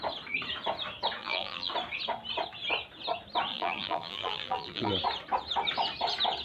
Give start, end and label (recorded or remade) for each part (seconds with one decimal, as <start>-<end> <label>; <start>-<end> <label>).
0.0-1.2 recorded; 1.2-1.7 remade; 1.7-3.5 recorded; 3.5-4.9 remade; 4.9-6.4 recorded